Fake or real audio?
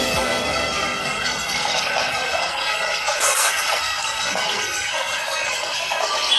fake